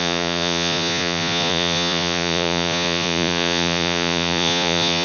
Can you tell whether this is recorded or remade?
remade